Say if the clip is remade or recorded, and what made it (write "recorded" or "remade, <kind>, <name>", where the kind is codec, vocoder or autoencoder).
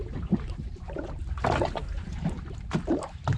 remade, vocoder, BigVGAN v2